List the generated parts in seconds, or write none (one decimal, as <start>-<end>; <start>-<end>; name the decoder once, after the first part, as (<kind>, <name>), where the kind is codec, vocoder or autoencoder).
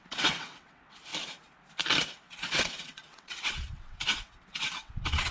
0.0-1.1 (vocoder, WaveNeXt); 2.1-5.3